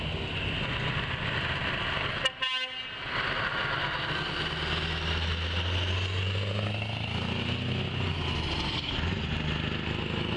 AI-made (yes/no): no